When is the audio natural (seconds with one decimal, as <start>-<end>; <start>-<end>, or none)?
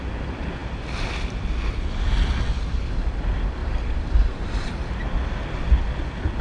0.0-3.6; 4.8-6.4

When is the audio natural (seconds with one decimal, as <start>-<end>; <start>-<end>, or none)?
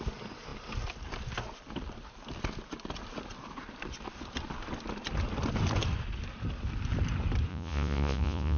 0.0-7.5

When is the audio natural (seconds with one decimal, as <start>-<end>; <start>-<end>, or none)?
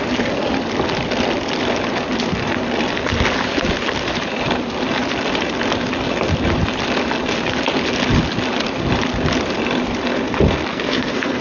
0.0-10.7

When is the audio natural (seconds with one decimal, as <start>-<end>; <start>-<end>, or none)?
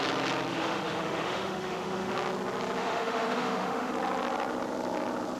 0.0-0.5; 2.1-2.8; 3.9-5.4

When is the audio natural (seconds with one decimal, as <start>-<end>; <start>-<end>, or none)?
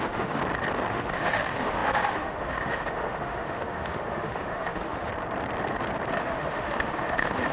0.4-0.9; 5.1-6.2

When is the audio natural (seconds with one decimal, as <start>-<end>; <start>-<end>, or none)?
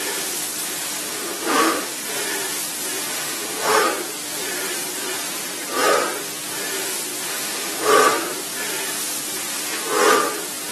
0.0-1.1; 1.9-3.1; 3.8-7.3; 7.9-10.7